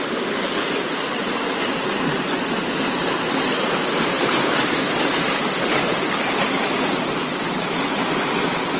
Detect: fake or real real